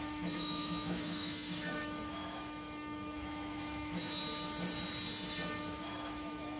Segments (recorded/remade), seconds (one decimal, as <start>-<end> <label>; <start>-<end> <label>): 0.0-4.2 remade; 4.2-5.8 recorded; 5.8-6.6 remade

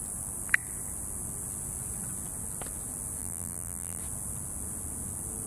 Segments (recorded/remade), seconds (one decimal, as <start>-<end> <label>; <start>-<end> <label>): 0.0-3.2 recorded; 3.2-4.0 remade; 4.0-5.5 recorded

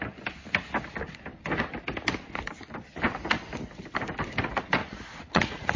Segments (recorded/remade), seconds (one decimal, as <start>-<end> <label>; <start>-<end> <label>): 0.0-4.8 recorded; 4.8-5.8 remade

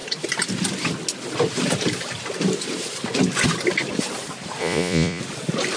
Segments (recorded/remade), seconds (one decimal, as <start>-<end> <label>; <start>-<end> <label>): 0.0-4.6 recorded; 4.6-5.2 remade; 5.2-5.8 recorded

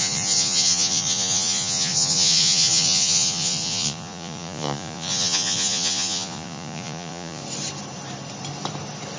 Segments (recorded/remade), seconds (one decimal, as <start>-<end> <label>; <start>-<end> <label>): 0.0-7.4 remade; 7.4-9.2 recorded